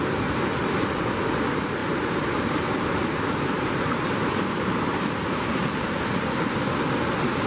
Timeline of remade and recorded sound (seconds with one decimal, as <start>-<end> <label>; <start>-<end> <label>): 0.0-1.8 recorded; 1.8-6.3 remade; 6.3-7.5 recorded